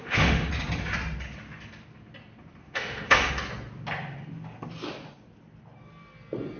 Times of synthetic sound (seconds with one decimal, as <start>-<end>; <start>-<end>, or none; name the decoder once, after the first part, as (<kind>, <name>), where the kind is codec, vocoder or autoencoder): 0.0-0.5 (autoencoder, DAC-VAE); 2.6-3.3